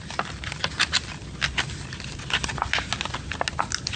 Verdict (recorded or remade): recorded